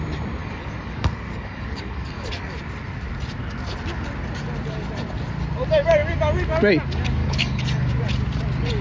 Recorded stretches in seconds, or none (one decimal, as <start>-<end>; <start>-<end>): 0.0-0.4; 2.6-7.2; 7.9-8.8